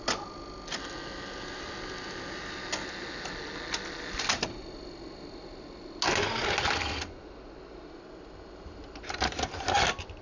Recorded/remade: recorded